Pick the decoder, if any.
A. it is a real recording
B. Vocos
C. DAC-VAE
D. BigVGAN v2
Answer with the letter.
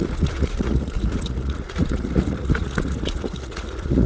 B